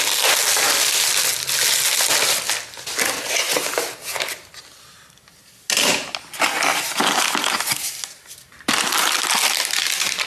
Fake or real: real